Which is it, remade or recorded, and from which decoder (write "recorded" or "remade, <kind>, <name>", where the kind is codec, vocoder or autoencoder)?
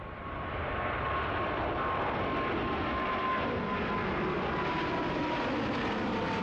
recorded